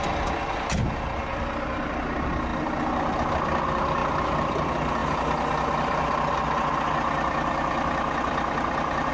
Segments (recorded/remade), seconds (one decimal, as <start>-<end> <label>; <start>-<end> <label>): 0.0-9.1 recorded

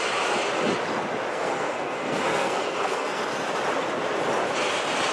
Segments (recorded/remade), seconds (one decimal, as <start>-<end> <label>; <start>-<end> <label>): 0.0-1.3 recorded; 1.3-3.2 remade; 3.2-5.1 recorded

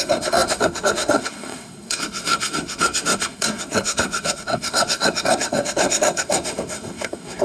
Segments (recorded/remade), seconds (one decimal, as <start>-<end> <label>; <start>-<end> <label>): 0.0-7.4 remade

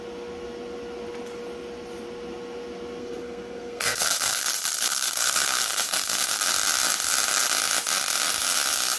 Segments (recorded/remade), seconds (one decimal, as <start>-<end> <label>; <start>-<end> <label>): 0.0-3.0 recorded; 3.0-6.4 remade; 6.4-9.0 recorded